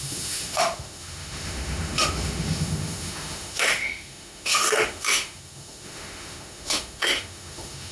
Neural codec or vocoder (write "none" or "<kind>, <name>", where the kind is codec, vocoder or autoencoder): autoencoder, DAC-VAE